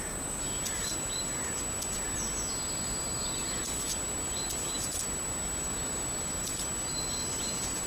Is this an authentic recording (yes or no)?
yes